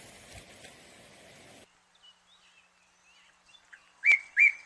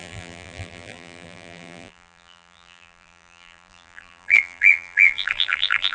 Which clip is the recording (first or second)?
first